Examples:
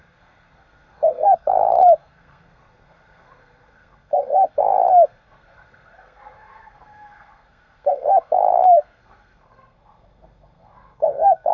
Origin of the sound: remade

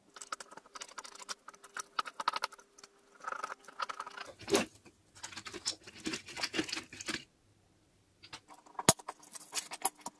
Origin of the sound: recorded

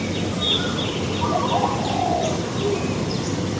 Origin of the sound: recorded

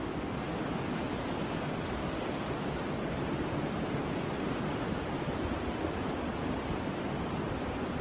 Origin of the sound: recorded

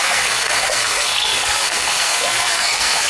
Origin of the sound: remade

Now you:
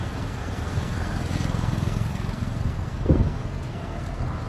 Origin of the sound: remade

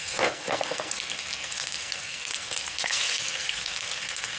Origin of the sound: remade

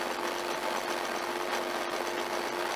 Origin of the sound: recorded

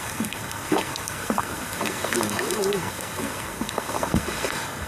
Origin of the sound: remade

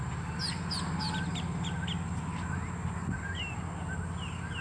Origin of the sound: recorded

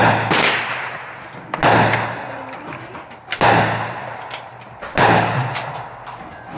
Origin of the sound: recorded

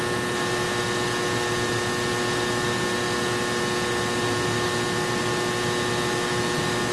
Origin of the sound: recorded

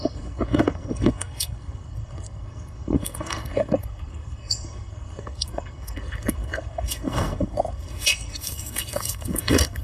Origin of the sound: remade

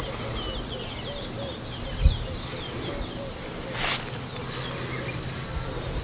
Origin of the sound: recorded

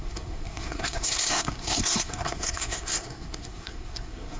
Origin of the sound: remade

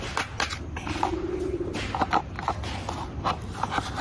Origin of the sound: recorded